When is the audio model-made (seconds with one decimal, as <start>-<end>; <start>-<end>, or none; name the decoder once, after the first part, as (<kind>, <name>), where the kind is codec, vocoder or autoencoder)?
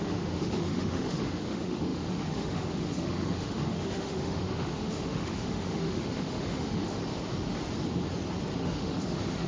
0.0-7.0 (autoencoder, DAC-VAE); 8.6-9.5